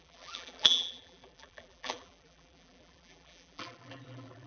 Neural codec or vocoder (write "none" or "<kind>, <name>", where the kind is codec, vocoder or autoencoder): vocoder, BigVGAN v2